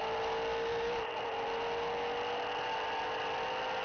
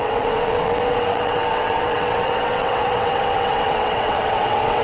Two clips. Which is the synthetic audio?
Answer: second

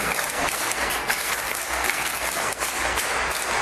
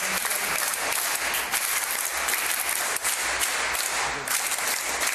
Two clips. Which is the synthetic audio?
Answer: first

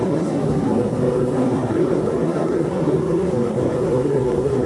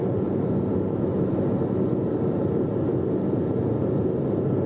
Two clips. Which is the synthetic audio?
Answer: first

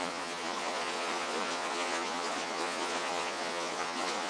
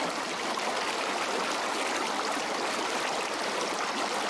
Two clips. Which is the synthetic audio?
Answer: first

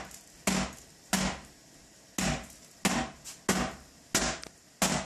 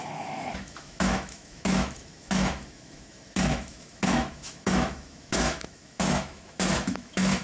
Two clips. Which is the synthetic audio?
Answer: second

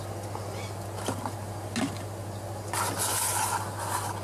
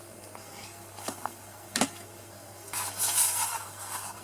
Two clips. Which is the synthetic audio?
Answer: second